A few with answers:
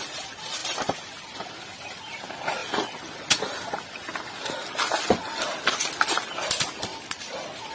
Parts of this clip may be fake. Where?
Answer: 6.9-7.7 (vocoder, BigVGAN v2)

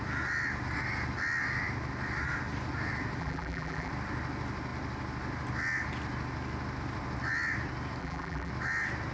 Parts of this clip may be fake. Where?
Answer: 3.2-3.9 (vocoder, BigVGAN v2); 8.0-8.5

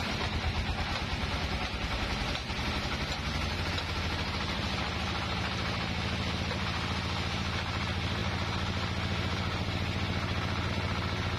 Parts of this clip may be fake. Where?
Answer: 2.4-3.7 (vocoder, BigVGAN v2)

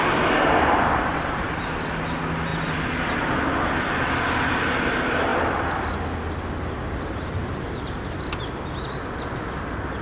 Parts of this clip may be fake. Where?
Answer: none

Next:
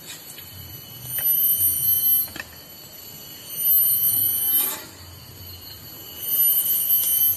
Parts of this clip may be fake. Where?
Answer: none

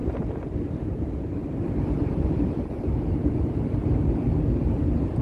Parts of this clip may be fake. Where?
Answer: 1.4-4.5 (vocoder, BigVGAN v2)